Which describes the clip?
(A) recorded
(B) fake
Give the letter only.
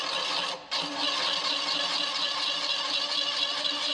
A